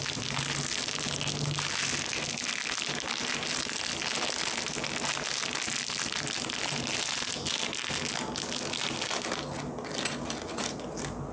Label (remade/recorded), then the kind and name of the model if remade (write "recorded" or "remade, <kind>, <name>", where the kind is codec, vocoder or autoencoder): recorded